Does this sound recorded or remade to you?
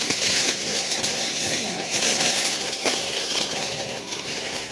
remade